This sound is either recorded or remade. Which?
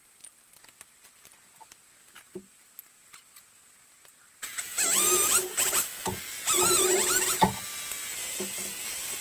recorded